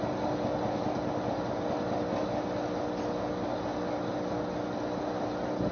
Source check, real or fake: real